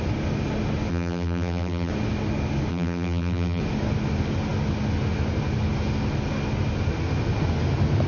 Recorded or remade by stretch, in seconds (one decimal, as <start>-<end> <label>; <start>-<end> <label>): 0.0-0.9 recorded; 0.9-1.9 remade; 1.9-2.7 recorded; 2.7-3.6 remade; 3.6-8.1 recorded